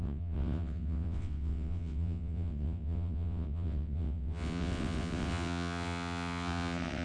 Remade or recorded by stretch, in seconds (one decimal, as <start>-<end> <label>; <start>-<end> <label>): 0.0-7.0 remade